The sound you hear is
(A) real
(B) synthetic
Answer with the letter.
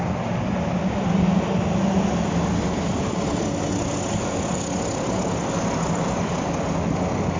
A